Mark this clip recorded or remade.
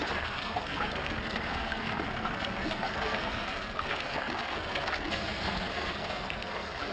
remade